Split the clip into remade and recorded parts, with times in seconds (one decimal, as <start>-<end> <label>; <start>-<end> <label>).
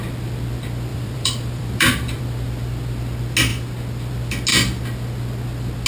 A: 0.0-0.9 recorded; 0.9-2.2 remade; 2.2-5.9 recorded